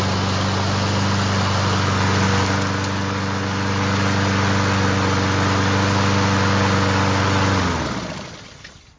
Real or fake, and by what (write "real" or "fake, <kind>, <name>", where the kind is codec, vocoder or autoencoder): real